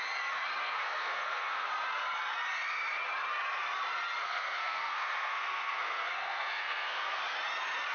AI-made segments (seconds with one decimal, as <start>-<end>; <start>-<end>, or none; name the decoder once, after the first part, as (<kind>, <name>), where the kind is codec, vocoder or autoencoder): 0.6-1.7 (codec, SNAC); 4.2-7.2